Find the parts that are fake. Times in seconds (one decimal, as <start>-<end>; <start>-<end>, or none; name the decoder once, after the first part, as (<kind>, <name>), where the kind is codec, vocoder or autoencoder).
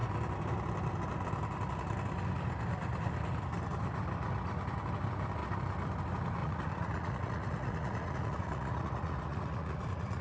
6.4-10.2 (vocoder, Vocos)